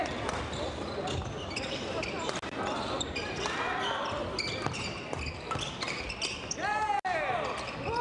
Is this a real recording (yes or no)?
yes